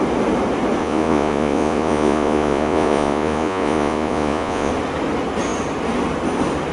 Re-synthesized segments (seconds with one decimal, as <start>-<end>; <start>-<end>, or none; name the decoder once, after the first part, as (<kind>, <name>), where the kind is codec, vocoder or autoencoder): 0.8-4.7 (vocoder, Vocos)

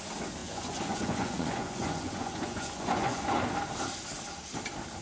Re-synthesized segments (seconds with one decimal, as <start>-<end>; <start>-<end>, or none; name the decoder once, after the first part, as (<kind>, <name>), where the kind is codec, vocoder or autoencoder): 0.4-3.4 (vocoder, Vocos)

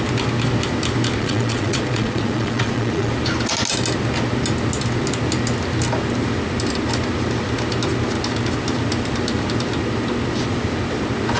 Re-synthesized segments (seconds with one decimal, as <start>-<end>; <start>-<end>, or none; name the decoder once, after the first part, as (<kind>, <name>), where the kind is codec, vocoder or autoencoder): 1.2-3.1 (vocoder, Vocos)

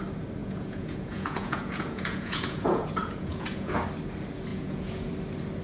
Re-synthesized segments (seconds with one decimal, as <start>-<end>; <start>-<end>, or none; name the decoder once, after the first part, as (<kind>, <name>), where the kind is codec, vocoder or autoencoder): 0.4-3.8 (vocoder, Vocos); 4.5-5.1